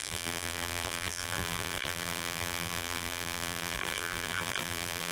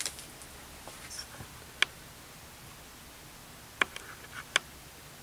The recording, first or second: second